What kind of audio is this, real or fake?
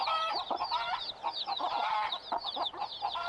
real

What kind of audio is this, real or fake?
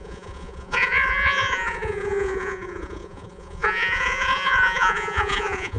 fake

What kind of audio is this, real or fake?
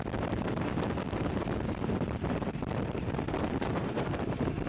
fake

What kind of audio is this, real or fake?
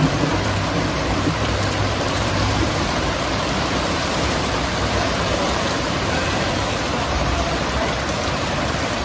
fake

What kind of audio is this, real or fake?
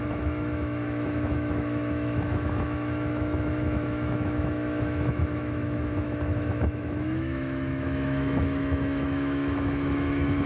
fake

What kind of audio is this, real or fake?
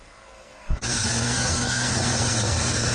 fake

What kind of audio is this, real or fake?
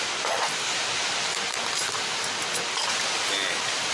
real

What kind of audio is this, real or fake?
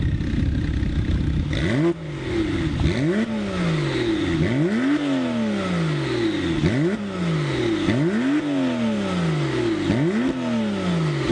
real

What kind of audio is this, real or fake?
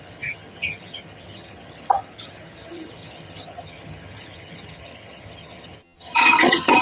fake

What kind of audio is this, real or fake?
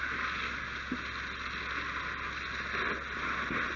real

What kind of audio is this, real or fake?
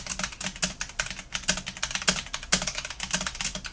real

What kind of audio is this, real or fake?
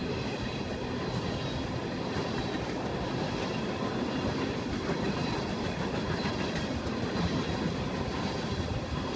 fake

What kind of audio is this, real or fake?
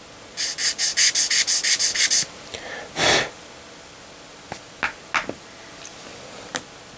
real